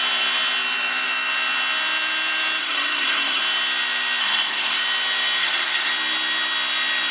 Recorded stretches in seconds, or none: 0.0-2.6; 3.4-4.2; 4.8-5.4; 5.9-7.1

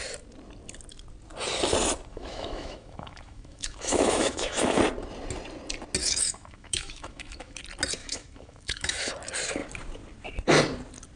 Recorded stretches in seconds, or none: 0.0-2.1; 4.8-6.0; 7.6-8.0; 9.1-11.2

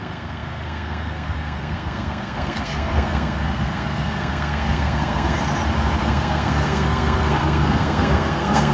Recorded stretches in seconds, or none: 5.4-6.0